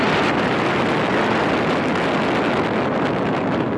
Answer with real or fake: real